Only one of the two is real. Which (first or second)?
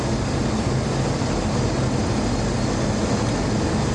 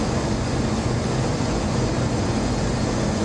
first